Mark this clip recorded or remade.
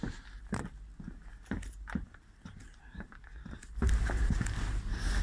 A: recorded